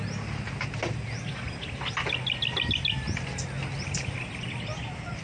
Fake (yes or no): no